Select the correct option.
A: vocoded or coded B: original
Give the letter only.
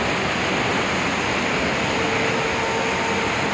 B